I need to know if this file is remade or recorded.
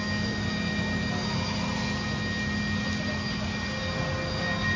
recorded